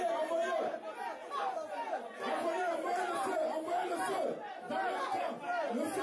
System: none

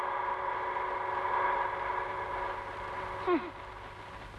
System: none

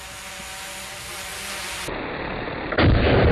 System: none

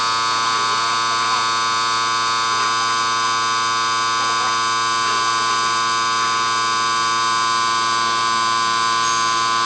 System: none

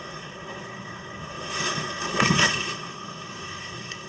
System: codec, SNAC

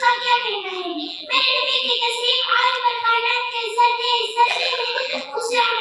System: vocoder, BigVGAN v2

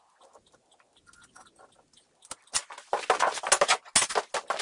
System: none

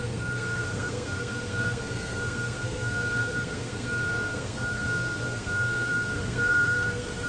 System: codec, SNAC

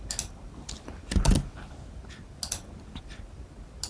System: none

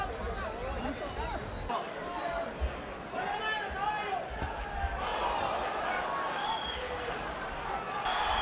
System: none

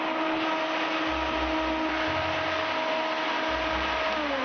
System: none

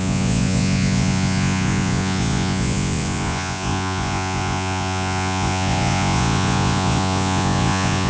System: vocoder, Vocos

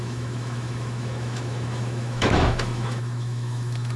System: autoencoder, DAC-VAE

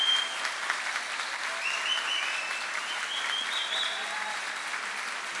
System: none